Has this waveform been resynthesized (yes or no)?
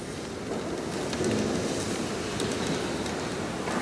no